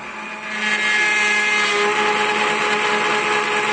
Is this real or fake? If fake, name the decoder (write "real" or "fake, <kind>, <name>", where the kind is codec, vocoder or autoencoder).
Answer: real